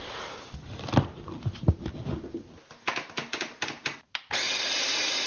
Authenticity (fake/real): real